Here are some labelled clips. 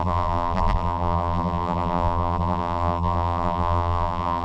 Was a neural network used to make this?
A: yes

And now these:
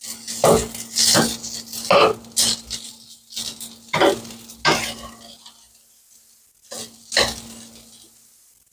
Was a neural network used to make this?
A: no